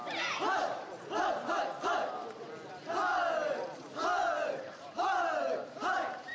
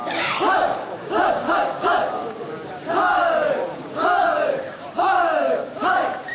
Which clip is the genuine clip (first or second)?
first